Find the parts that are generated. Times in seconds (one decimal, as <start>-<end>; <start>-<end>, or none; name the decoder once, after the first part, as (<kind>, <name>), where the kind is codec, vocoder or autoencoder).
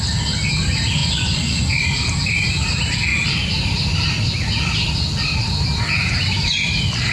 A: 1.0-1.6 (vocoder, Vocos)